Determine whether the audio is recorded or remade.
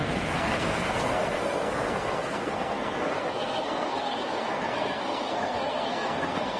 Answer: remade